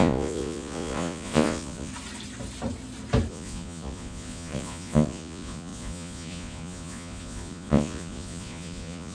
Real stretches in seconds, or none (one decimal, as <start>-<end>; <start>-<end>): 1.9-3.3